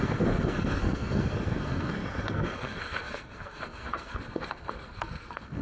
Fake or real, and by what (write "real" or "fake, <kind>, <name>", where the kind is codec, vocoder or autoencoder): fake, codec, SNAC